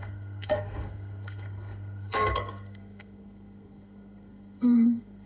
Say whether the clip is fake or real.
fake